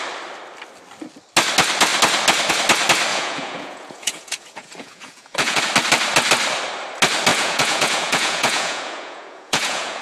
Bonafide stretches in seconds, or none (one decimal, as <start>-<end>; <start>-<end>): 0.0-3.1; 5.6-7.3